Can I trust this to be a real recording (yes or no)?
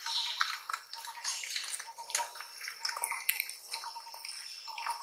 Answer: yes